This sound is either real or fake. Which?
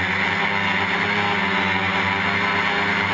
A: real